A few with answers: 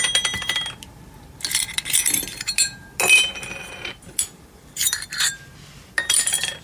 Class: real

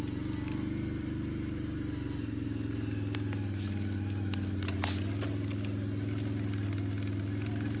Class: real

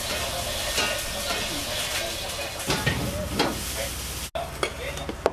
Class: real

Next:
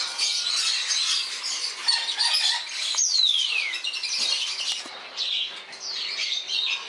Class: real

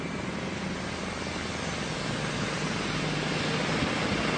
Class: real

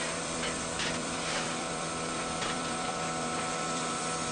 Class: fake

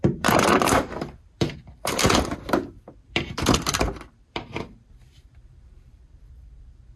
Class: fake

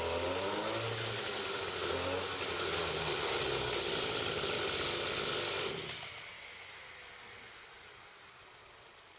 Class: real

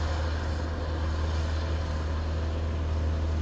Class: real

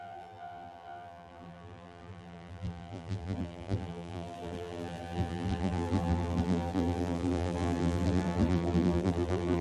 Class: fake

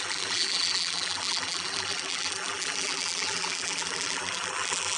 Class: fake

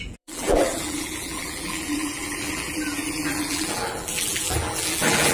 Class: fake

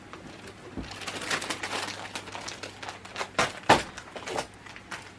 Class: real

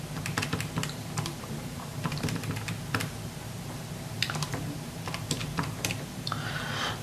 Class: fake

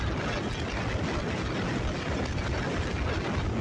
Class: real